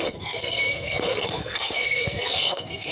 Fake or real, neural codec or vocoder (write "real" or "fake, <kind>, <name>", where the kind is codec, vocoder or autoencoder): fake, codec, SNAC